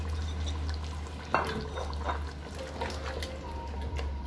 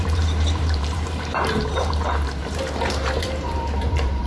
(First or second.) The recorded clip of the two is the first